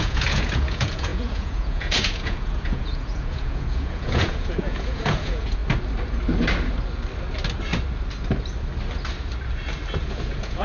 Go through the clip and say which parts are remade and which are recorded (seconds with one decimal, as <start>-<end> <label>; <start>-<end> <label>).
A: 0.0-5.6 remade; 5.6-10.2 recorded; 10.2-10.6 remade